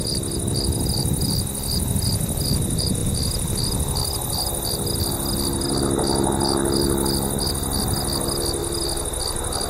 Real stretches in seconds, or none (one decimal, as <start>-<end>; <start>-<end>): 0.0-9.7